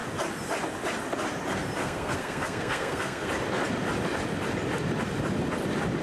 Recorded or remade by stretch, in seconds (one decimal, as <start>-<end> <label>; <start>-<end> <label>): 0.0-1.8 recorded; 1.8-3.3 remade; 3.3-6.0 recorded